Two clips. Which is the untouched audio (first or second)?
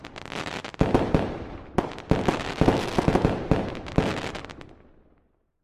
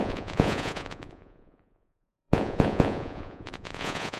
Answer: first